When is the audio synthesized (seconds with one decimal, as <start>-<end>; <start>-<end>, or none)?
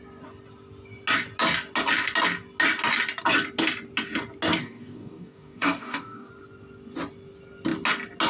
4.6-6.3